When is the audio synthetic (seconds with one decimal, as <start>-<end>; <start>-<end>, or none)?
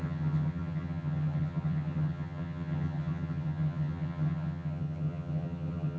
0.0-6.0